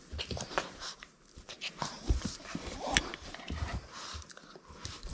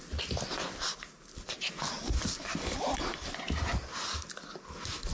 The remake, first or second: first